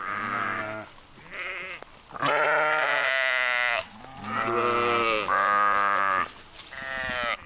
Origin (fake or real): real